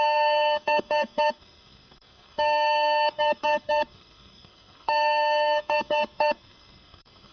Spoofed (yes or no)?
yes